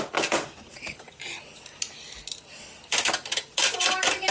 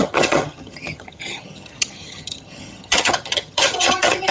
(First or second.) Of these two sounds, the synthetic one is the second